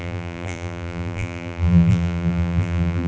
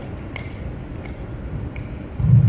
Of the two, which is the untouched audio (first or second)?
second